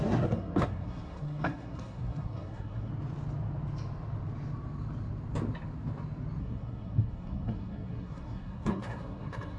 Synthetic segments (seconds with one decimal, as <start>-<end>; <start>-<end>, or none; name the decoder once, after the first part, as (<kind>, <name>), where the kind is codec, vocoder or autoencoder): 0.0-2.9 (codec, SNAC); 6.4-9.6